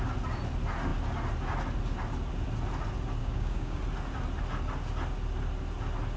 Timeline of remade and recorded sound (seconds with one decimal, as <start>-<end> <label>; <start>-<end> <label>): 0.0-3.2 recorded; 3.2-3.8 remade; 3.8-6.2 recorded

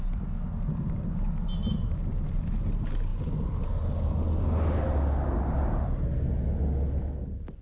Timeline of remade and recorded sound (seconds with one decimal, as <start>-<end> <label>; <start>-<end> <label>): 0.0-7.6 recorded

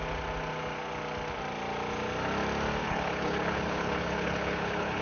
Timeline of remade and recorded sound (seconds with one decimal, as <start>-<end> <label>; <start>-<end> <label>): 0.0-2.8 recorded; 2.8-5.0 remade

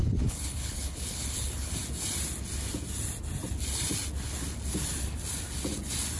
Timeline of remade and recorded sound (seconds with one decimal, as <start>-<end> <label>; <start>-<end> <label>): 0.0-1.7 remade; 1.7-6.2 recorded